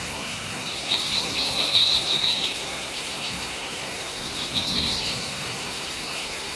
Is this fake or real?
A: fake